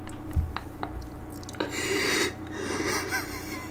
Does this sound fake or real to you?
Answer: real